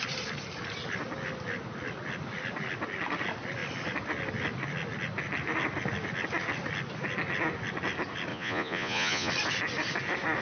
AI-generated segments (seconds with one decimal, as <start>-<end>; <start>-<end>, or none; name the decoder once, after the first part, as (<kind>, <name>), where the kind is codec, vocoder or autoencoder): 8.3-9.3 (vocoder, Vocos)